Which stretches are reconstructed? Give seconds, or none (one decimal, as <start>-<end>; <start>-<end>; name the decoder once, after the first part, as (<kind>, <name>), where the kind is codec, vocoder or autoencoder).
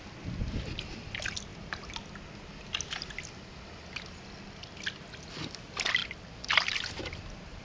none